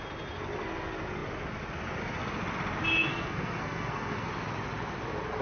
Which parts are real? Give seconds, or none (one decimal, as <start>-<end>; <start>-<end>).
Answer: 0.0-3.1; 4.3-5.4